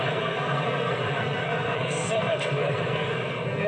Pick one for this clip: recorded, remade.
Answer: remade